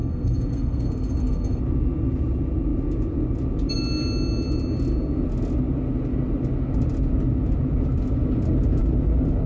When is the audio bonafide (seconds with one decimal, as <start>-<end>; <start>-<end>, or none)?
1.6-9.5